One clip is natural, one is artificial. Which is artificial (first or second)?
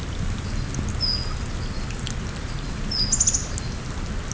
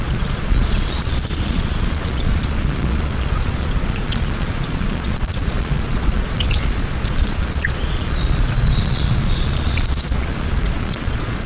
second